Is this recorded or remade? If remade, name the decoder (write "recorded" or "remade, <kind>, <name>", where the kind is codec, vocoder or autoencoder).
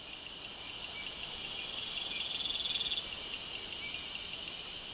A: recorded